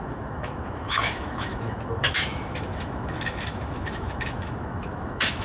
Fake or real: fake